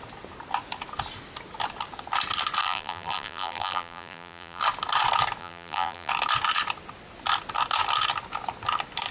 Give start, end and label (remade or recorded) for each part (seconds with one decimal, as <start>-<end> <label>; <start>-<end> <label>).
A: 0.0-2.6 recorded; 2.6-4.6 remade; 4.6-5.4 recorded; 5.4-6.1 remade; 6.1-9.1 recorded